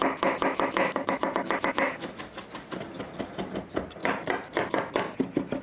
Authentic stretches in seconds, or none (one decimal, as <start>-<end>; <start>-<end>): 2.2-5.6